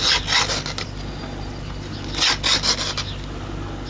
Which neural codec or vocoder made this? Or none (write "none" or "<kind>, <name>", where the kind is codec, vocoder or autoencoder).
none